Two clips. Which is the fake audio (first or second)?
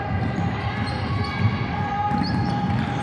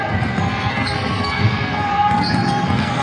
second